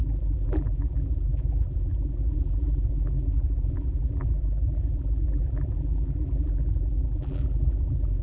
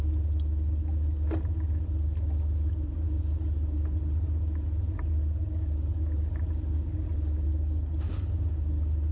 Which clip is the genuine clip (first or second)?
second